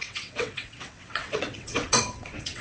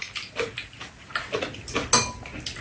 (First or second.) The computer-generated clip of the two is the first